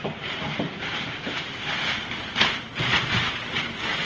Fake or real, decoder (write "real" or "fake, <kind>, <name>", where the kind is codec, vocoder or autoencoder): fake, vocoder, BigVGAN v2